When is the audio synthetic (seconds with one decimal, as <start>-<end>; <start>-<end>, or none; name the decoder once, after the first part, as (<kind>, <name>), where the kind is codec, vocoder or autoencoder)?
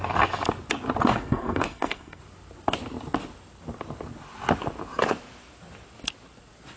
1.1-2.2 (codec, SNAC)